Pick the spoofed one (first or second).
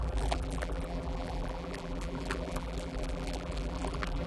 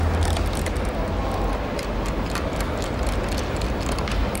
first